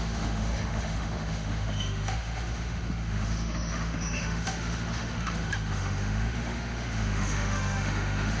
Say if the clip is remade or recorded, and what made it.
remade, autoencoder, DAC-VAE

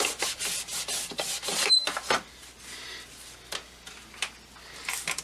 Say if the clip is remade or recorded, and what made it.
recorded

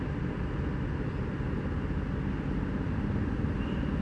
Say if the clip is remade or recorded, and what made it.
recorded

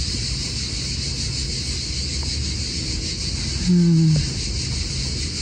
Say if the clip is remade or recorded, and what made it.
recorded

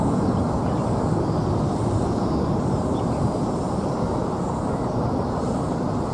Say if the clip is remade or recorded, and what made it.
recorded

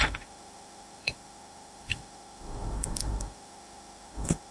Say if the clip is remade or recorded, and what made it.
remade, autoencoder, DAC-VAE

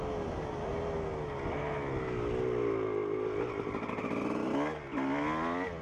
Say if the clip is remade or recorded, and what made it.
recorded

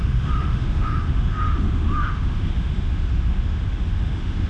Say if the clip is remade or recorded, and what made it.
remade, autoencoder, DAC-VAE